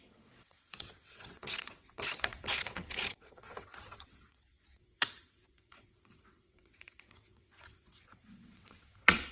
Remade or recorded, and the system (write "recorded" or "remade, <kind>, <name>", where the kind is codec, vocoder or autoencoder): remade, vocoder, WaveNeXt